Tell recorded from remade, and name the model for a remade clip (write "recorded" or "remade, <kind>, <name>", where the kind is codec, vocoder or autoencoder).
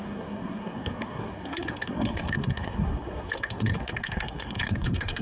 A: remade, codec, SNAC